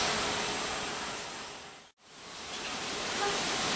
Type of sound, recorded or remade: recorded